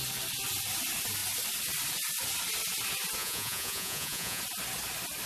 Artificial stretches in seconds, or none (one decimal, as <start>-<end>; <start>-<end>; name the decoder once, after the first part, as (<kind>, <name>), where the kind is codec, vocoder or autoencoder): 3.2-4.4 (vocoder, Vocos)